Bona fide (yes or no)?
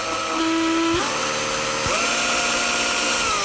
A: yes